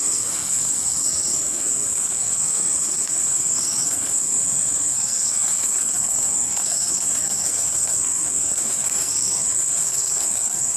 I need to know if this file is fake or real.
fake